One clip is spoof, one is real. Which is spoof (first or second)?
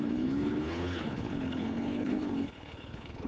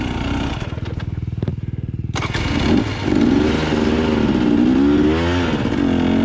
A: first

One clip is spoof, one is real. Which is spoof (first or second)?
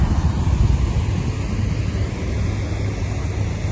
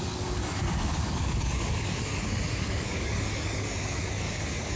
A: second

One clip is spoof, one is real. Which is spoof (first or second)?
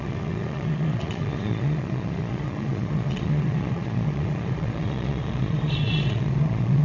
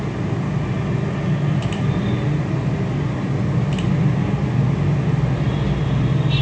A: first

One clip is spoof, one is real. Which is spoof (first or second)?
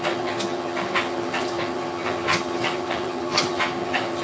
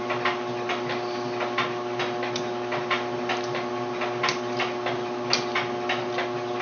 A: first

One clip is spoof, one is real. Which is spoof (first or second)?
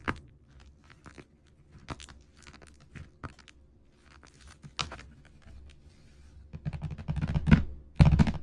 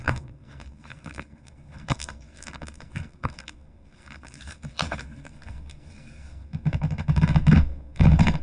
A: second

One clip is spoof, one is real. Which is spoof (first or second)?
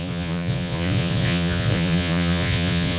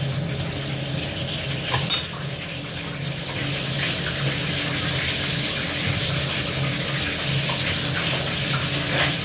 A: first